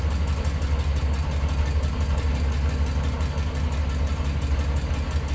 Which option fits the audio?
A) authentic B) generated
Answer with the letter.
A